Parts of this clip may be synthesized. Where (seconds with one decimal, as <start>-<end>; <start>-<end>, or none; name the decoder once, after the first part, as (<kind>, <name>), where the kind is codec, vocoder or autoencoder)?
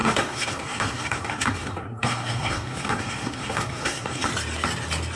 0.0-4.3 (codec, SNAC)